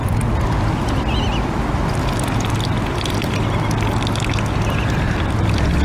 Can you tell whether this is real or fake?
real